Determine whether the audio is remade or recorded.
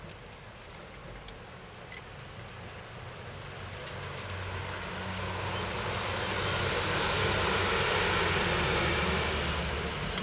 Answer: recorded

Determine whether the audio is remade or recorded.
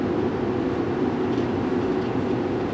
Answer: recorded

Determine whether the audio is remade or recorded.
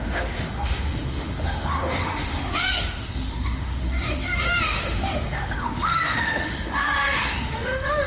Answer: remade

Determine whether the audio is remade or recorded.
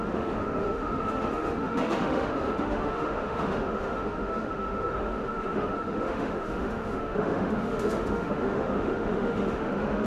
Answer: remade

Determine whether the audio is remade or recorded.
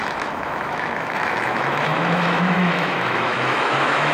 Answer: remade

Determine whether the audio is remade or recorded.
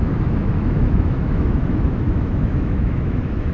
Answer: remade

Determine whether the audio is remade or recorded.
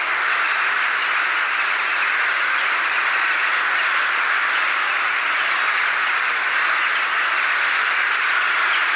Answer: recorded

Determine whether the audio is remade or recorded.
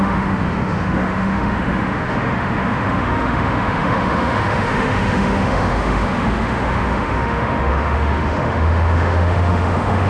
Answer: remade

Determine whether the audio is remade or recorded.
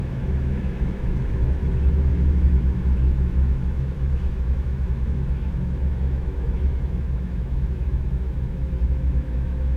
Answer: remade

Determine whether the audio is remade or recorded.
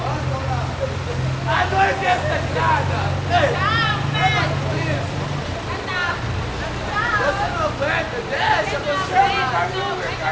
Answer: recorded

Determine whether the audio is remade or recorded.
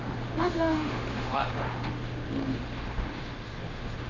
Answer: remade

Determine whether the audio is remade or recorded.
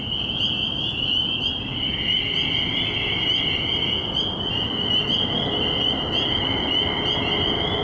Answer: recorded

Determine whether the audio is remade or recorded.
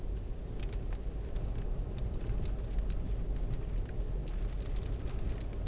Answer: recorded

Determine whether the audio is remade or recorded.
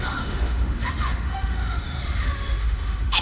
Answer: remade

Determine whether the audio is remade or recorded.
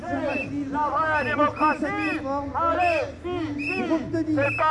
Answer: recorded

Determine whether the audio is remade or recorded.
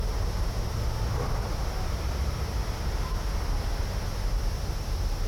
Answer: recorded